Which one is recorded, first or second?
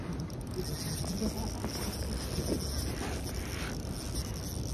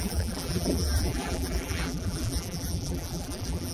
first